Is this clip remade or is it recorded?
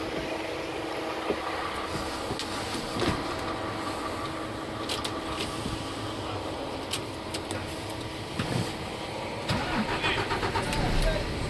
recorded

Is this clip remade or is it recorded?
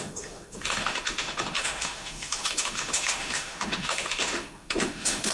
remade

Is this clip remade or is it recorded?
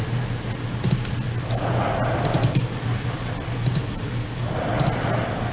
recorded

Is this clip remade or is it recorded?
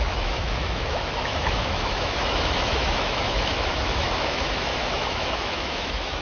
remade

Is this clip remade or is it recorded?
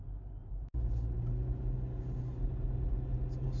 recorded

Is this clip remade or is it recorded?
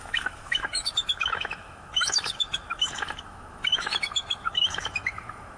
remade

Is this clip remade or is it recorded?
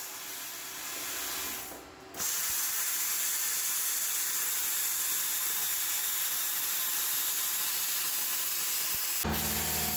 recorded